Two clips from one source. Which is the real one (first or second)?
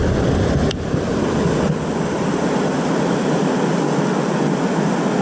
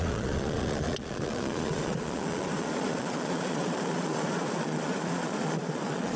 first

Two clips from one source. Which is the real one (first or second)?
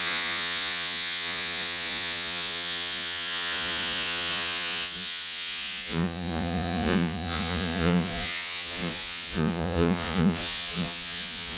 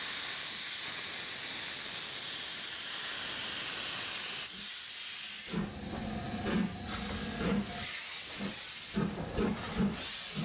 second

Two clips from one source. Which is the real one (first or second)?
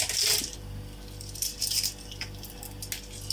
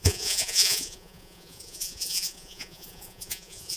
first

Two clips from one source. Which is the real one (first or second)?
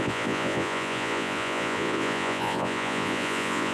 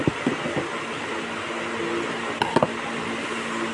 second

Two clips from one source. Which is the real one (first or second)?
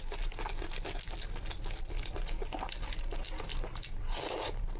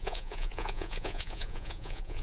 first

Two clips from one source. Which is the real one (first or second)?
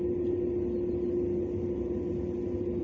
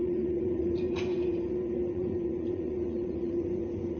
first